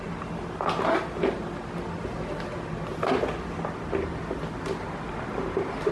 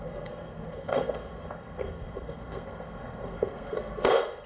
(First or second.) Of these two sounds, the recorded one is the first